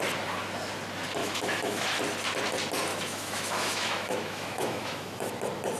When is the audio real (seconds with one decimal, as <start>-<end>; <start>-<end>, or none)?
0.0-1.2; 2.0-2.9; 5.3-5.8